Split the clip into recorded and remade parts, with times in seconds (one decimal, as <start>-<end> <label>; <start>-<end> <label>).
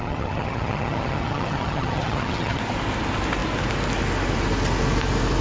0.0-2.6 remade; 2.6-5.4 recorded